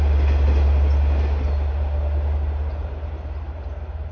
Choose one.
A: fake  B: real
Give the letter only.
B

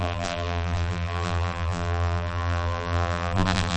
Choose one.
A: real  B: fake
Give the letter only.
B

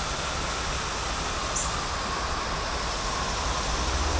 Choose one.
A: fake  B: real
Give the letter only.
B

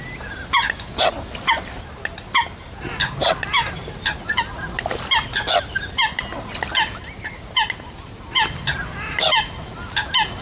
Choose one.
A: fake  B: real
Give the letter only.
B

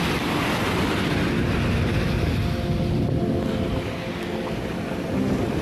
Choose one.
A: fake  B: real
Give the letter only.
B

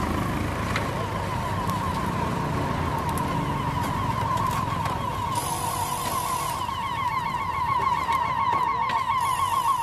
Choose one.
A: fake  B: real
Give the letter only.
B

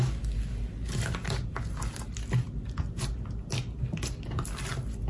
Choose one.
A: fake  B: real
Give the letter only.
B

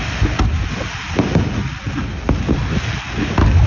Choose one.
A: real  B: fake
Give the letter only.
A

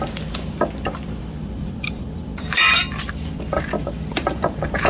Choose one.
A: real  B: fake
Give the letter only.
B